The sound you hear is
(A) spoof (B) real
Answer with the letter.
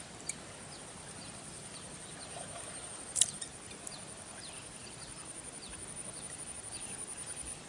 A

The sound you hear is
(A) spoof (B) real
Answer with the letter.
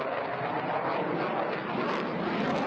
B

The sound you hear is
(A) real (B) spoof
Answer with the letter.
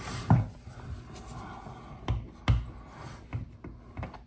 A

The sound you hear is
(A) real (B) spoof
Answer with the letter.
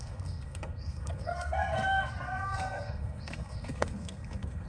B